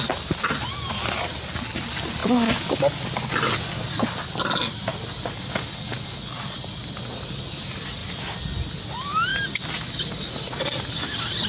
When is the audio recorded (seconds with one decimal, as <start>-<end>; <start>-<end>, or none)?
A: 0.0-11.5